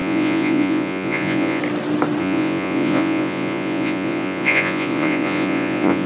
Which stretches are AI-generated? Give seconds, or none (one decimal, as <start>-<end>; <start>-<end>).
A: 0.0-1.6; 2.2-6.1